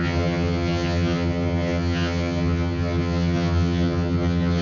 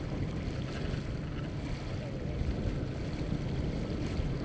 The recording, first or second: second